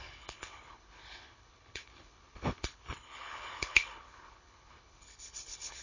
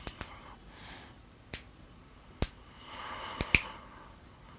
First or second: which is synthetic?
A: first